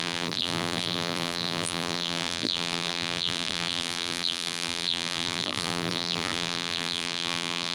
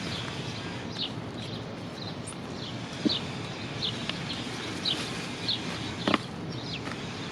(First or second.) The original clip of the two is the second